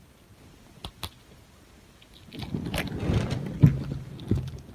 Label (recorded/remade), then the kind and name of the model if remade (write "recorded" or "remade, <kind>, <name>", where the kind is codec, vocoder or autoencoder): recorded